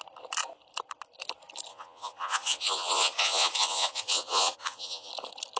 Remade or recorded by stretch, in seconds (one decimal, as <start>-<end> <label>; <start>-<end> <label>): 0.0-1.7 recorded; 1.7-5.1 remade; 5.1-5.6 recorded